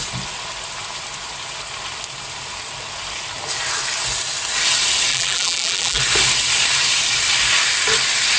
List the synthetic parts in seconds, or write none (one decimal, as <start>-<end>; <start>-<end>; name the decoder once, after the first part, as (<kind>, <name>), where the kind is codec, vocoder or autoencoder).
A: 5.1-6.0 (vocoder, BigVGAN v2)